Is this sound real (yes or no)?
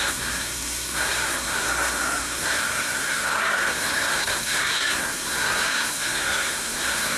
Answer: no